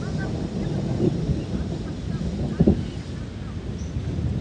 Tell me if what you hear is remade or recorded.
recorded